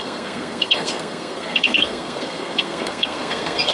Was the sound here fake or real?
fake